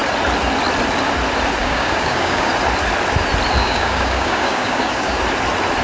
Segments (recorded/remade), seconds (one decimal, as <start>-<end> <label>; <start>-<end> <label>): 0.0-1.6 recorded; 1.6-2.5 remade; 2.5-3.6 recorded; 3.6-5.2 remade; 5.2-5.8 recorded